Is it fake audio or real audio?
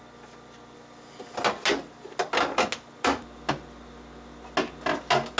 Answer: real